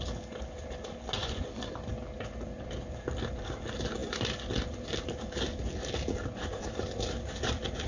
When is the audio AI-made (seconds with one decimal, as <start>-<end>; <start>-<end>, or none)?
1.2-1.8